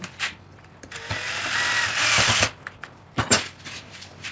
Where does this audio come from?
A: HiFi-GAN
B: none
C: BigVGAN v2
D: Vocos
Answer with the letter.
C